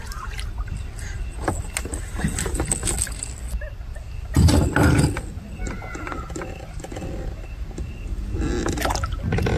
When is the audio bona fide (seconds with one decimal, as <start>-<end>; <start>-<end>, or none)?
0.0-9.6